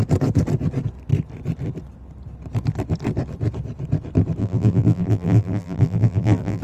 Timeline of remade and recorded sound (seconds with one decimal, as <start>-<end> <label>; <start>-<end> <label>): 0.0-4.4 recorded; 4.4-6.6 remade